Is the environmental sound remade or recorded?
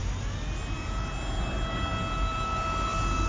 recorded